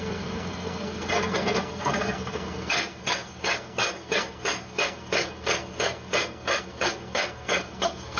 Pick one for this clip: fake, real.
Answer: fake